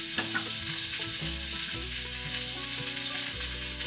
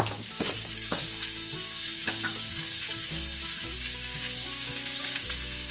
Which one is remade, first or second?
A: second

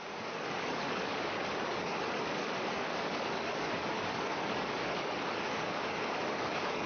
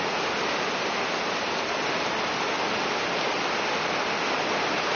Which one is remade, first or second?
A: first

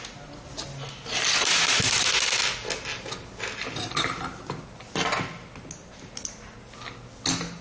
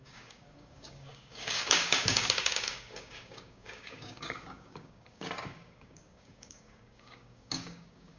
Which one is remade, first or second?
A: second